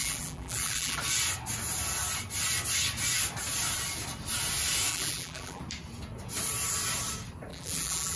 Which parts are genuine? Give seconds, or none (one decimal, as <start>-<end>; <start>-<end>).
1.0-4.9; 5.6-7.5

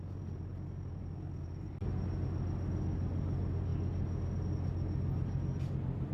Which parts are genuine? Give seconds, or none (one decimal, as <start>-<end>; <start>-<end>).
0.0-6.1